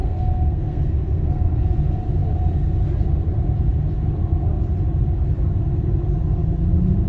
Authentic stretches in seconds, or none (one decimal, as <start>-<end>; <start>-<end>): 1.7-7.1